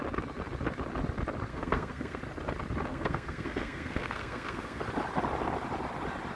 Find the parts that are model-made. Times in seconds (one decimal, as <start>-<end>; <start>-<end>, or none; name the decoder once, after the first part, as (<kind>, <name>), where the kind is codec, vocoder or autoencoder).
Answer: 1.5-2.2 (codec, SNAC); 2.9-4.8